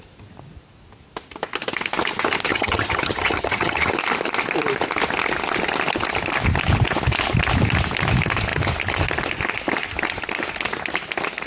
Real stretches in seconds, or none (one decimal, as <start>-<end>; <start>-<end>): 0.0-2.5; 3.9-11.5